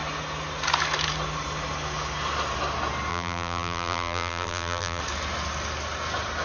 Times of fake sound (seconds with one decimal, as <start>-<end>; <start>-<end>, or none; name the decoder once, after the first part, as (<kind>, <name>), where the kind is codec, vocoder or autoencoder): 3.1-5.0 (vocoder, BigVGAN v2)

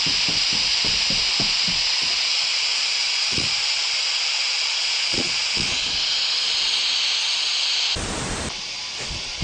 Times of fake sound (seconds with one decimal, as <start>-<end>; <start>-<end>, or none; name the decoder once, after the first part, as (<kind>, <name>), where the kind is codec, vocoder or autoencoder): 1.7-6.8 (vocoder, Vocos); 7.2-7.7

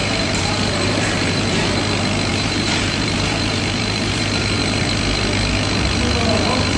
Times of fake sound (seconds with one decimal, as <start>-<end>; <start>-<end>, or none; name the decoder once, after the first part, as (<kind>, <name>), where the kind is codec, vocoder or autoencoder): 0.0-1.8 (vocoder, BigVGAN v2); 2.3-4.8